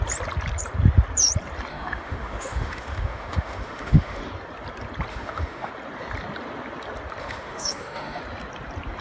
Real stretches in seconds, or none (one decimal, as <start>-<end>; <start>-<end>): 0.0-1.7; 4.2-5.1; 5.7-7.2; 8.2-9.0